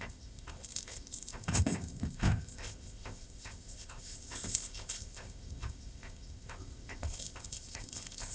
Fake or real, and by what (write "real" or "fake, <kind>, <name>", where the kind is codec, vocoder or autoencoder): fake, codec, ZipCodec